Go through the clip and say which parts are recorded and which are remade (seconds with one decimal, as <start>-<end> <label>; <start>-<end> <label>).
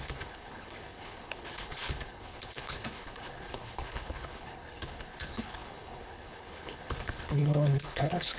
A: 0.0-8.4 remade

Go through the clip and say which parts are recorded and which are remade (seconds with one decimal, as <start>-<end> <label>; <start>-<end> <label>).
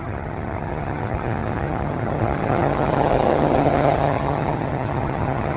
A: 0.0-5.6 remade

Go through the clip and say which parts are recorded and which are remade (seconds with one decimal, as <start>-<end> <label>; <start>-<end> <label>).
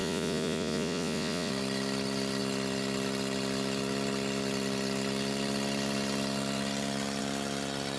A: 0.0-1.5 remade; 1.5-8.0 recorded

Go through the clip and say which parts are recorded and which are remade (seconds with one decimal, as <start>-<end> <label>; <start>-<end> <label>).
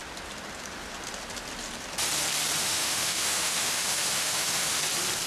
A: 0.0-2.6 recorded; 2.6-4.8 remade; 4.8-5.3 recorded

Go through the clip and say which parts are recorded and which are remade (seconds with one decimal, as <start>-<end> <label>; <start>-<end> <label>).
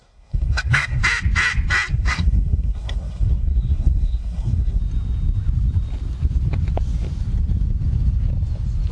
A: 0.0-1.0 remade; 1.0-1.9 recorded; 1.9-4.8 remade; 4.8-8.9 recorded